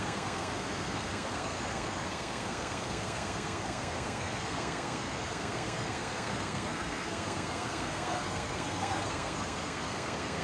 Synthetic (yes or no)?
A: yes